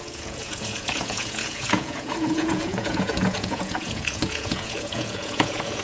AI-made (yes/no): yes